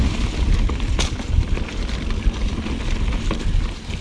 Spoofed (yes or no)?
no